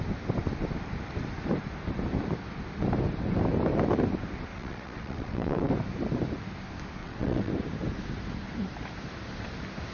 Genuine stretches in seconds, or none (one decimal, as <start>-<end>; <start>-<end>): 0.0-4.5; 5.7-7.0; 7.5-9.9